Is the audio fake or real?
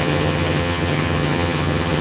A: fake